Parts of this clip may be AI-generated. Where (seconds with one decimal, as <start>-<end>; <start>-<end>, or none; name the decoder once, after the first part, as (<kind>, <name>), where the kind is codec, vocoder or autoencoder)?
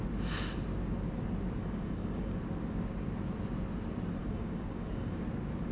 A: 1.6-2.4 (codec, DAC); 4.2-5.2